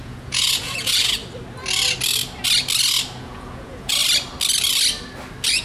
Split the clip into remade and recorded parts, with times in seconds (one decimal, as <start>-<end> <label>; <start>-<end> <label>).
0.0-1.2 remade; 1.2-3.2 recorded; 3.2-4.0 remade; 4.0-5.6 recorded